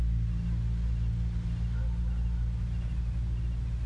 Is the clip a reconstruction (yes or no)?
no